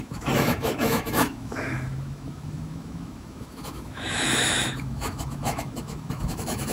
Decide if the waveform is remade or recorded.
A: remade